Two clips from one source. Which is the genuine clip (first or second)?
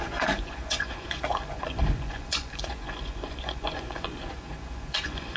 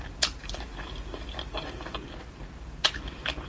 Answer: second